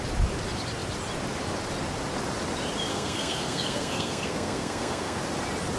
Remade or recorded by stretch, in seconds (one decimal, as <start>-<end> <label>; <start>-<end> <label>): 0.0-2.9 recorded; 2.9-5.2 remade; 5.2-5.8 recorded